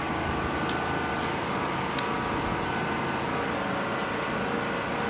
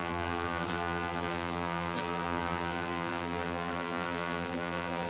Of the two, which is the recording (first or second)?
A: first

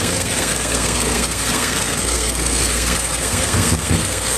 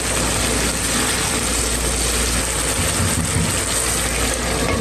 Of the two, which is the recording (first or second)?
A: second